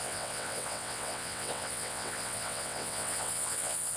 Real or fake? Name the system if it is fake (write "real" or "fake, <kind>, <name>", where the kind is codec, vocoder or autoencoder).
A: fake, vocoder, WaveNeXt